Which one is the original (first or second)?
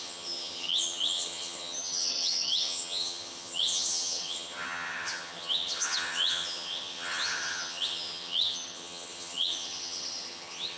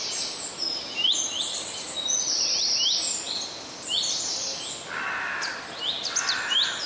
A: second